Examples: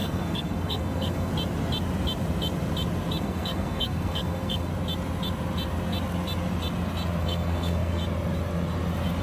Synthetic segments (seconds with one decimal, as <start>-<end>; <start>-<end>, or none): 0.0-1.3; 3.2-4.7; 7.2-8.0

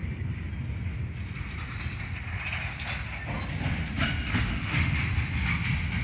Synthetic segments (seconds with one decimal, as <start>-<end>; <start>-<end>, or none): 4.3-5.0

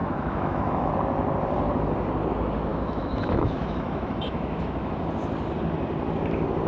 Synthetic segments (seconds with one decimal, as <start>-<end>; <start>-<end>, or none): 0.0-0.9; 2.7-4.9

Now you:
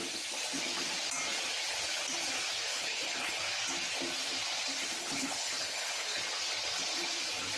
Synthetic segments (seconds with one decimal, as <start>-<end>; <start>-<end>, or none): 2.7-3.4; 5.0-6.2